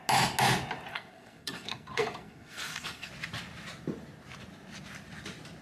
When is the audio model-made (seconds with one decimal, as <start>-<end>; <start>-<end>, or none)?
0.9-3.1